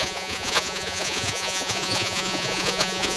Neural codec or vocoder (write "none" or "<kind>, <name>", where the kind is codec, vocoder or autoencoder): vocoder, Vocos